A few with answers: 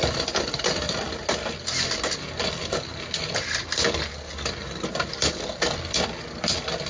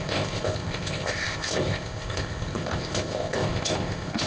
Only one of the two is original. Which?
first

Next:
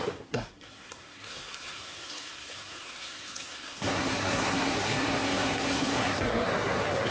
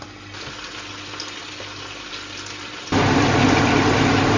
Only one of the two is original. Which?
second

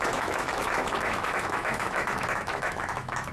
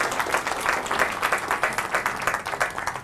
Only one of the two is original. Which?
second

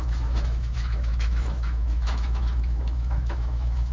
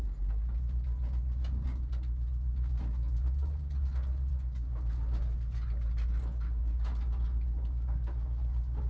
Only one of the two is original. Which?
second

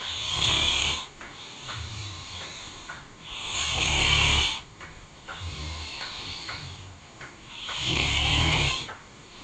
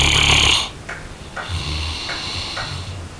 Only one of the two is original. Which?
second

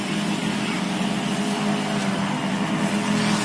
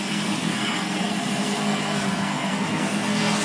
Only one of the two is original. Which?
first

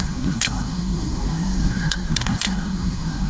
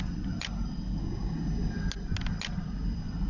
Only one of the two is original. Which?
second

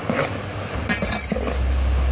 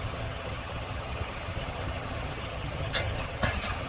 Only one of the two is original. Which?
first